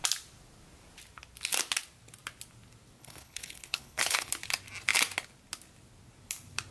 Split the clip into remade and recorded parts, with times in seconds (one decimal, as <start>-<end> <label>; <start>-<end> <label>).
0.0-3.0 recorded; 3.0-4.3 remade; 4.3-6.7 recorded